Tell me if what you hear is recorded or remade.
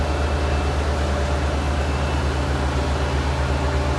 recorded